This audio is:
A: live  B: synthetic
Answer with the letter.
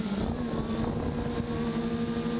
A